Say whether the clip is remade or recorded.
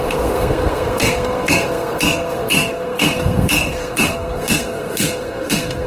remade